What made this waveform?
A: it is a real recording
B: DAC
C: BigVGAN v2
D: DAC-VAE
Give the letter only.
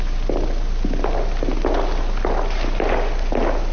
A